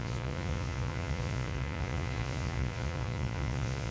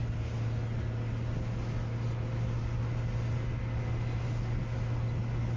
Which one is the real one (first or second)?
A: second